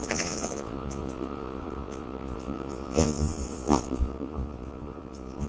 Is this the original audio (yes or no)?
no